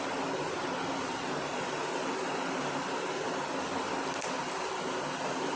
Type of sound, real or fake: real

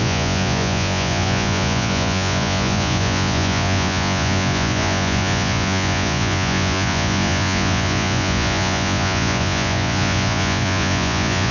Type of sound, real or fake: fake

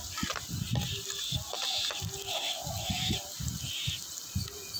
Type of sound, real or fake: real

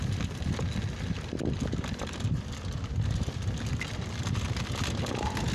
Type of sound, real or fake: real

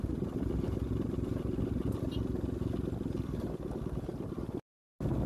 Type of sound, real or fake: real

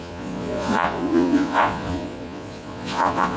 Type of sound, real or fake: fake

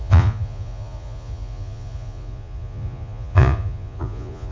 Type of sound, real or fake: fake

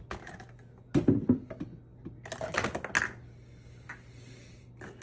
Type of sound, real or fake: real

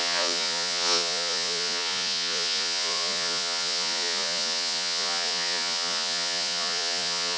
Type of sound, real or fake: fake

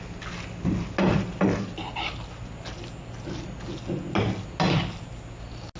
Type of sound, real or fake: real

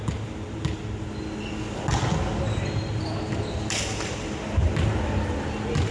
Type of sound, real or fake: real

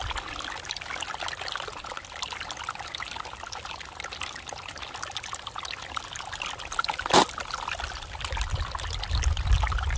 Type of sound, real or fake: real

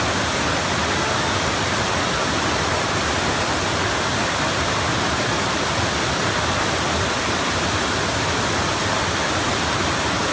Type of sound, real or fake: real